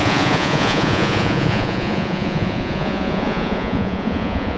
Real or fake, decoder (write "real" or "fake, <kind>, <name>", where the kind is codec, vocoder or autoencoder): fake, vocoder, Vocos